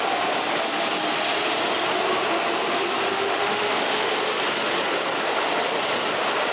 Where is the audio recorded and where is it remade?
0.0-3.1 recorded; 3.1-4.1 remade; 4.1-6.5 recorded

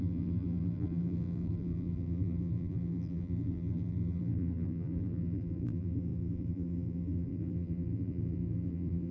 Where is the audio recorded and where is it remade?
0.0-9.1 remade

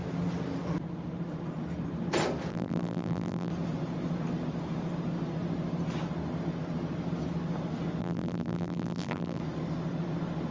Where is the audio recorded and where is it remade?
0.0-2.5 recorded; 2.5-3.5 remade; 3.5-8.0 recorded; 8.0-9.4 remade; 9.4-10.5 recorded

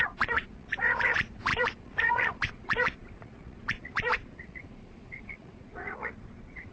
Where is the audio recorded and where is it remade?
0.0-6.7 remade

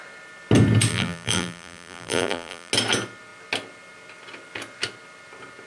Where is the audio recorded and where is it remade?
0.0-0.9 recorded; 0.9-2.7 remade; 2.7-5.7 recorded

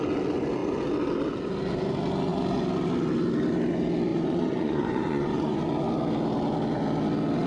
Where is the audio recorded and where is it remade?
0.0-4.1 recorded; 4.1-5.6 remade; 5.6-7.5 recorded

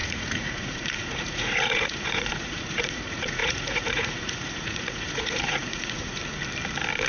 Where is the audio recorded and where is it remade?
0.0-6.2 remade; 6.2-7.1 recorded